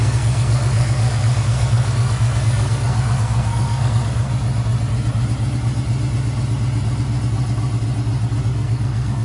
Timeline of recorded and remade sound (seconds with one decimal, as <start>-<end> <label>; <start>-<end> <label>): 0.0-4.3 remade; 4.3-8.4 recorded; 8.4-9.2 remade